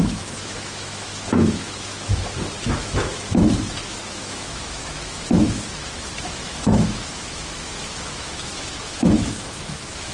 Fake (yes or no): yes